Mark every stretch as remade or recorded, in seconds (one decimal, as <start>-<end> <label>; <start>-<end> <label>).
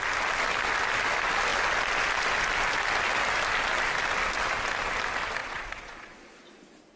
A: 0.0-5.4 recorded; 5.4-6.5 remade; 6.5-7.0 recorded